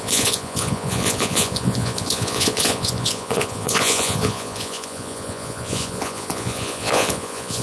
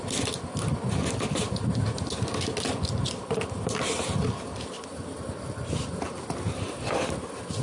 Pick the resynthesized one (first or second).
first